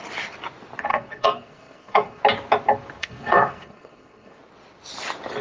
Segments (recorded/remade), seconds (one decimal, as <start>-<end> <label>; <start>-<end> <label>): 0.0-0.9 recorded; 0.9-2.2 remade; 2.2-3.0 recorded; 3.0-4.4 remade; 4.4-5.4 recorded